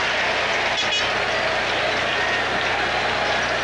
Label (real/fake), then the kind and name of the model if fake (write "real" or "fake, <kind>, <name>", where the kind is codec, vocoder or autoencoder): real